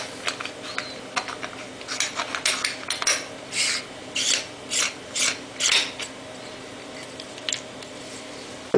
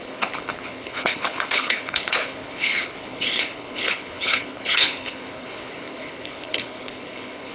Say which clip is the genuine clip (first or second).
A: first